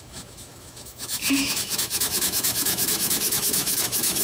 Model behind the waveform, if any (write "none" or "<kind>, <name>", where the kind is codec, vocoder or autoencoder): autoencoder, DAC-VAE